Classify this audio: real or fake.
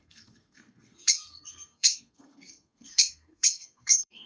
fake